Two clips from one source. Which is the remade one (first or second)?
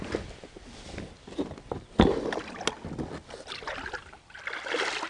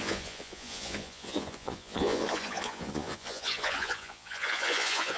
second